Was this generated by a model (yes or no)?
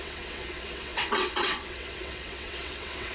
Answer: yes